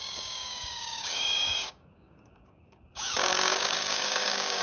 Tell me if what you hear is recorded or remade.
remade